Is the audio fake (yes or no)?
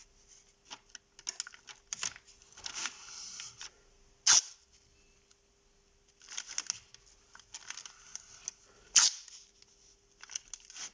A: no